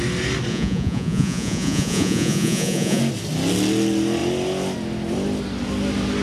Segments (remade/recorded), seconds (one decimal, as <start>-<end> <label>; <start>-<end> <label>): 0.0-0.5 recorded; 0.5-3.0 remade; 3.0-6.2 recorded